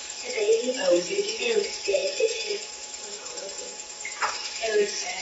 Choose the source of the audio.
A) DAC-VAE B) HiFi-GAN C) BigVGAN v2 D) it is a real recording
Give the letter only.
A